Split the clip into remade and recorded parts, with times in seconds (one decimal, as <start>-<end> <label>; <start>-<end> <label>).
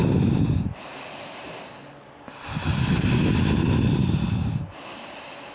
0.0-5.5 recorded